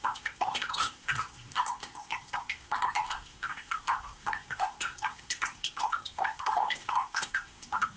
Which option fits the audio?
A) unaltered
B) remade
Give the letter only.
B